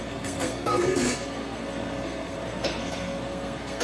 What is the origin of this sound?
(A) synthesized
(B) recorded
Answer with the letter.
A